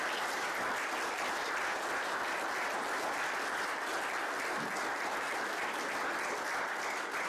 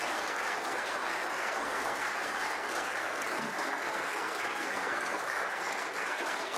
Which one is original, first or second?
first